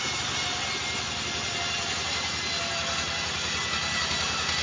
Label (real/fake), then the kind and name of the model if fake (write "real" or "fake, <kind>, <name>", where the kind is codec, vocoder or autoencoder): real